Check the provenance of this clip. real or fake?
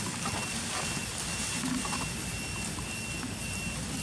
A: real